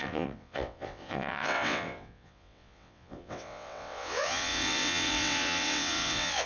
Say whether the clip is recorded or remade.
remade